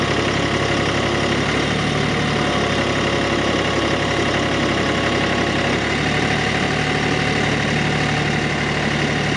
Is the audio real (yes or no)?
yes